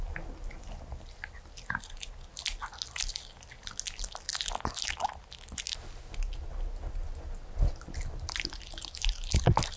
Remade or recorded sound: recorded